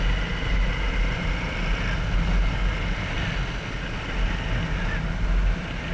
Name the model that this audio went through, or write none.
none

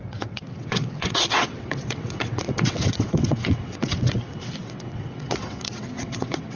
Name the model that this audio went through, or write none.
vocoder, WaveNeXt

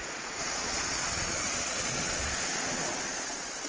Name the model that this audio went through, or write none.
vocoder, Vocos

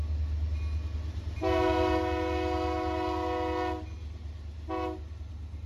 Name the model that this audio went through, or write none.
none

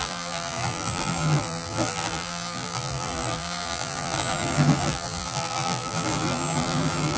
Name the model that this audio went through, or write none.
vocoder, BigVGAN v2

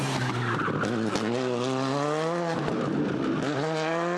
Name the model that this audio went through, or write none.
none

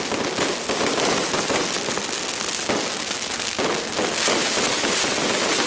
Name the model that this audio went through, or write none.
none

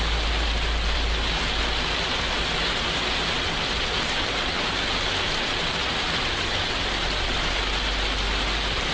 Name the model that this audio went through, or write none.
none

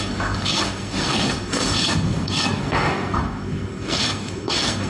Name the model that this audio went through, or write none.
codec, SNAC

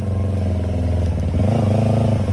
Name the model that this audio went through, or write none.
none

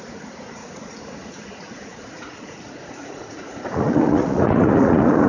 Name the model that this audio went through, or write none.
vocoder, Vocos